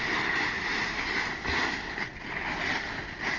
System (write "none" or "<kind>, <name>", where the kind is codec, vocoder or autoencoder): none